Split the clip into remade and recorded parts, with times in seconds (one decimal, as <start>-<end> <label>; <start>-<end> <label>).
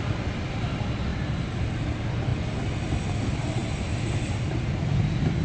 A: 0.0-1.1 recorded; 1.1-1.6 remade; 1.6-5.4 recorded